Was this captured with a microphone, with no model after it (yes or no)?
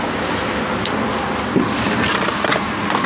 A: yes